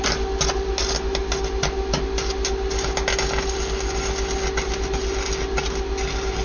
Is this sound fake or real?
real